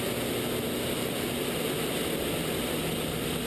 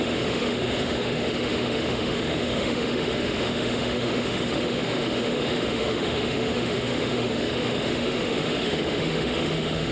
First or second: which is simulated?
second